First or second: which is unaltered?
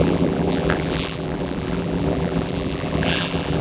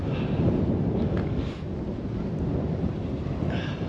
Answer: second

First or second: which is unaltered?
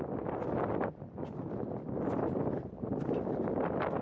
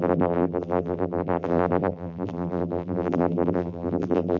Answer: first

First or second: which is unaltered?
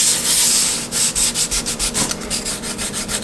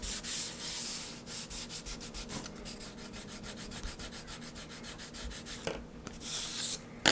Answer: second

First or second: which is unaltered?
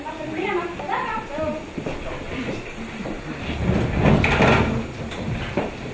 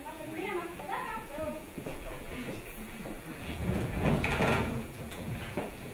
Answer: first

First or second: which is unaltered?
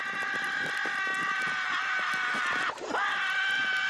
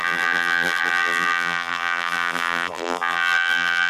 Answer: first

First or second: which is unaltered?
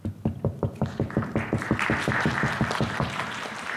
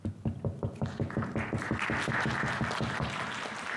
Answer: second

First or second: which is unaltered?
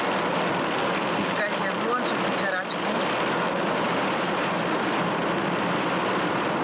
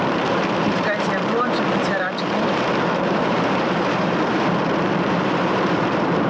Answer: first